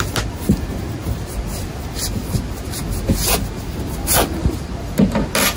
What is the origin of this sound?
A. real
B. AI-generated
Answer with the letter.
A